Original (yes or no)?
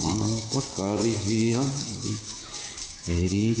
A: no